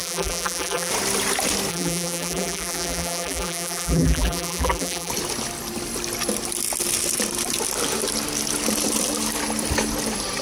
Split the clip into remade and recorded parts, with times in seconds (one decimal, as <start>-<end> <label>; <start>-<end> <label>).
0.0-0.9 remade; 0.9-1.7 recorded; 1.7-5.1 remade; 5.1-10.4 recorded